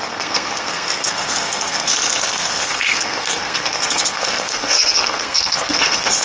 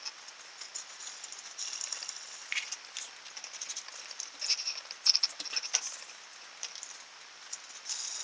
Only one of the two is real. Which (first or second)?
second